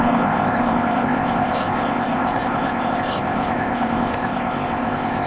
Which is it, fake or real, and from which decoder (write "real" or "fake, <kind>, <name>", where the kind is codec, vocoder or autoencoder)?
fake, codec, ZipCodec